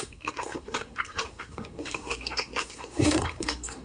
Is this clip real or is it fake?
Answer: fake